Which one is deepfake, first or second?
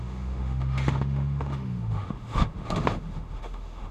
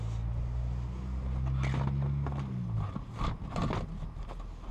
first